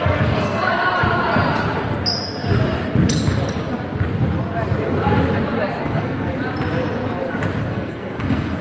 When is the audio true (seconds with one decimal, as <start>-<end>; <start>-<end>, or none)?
0.8-5.8; 6.3-7.7